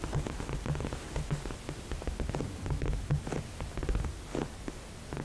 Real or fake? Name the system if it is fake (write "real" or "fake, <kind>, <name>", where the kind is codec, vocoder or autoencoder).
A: real